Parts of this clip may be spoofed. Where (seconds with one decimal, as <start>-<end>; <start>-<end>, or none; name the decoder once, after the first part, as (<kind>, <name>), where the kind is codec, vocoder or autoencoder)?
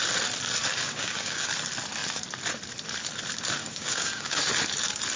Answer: 0.7-1.5 (codec, DAC); 3.6-4.4